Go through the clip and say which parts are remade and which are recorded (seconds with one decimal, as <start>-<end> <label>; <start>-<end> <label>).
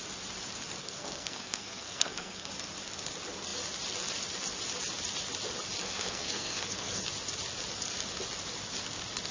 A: 0.0-0.8 recorded; 0.8-2.5 remade; 2.5-5.8 recorded; 5.8-7.0 remade; 7.0-9.3 recorded